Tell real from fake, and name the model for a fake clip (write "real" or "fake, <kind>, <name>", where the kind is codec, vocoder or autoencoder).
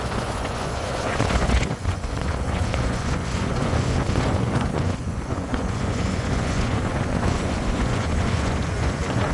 fake, vocoder, Vocos